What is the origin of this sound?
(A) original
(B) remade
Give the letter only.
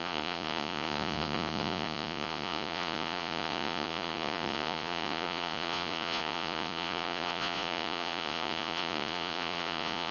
B